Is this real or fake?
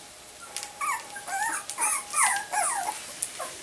real